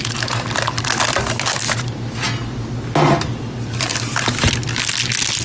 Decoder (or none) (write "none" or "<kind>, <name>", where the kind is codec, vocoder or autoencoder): none